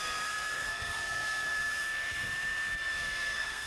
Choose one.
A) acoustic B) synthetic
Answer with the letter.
B